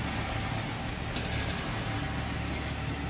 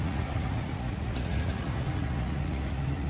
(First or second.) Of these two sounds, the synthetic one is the second